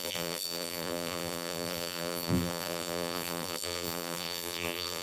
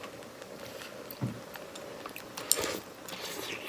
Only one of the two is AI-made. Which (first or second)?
first